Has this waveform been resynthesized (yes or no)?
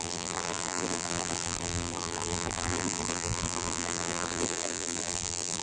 yes